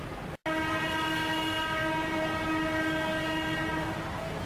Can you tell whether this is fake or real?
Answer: real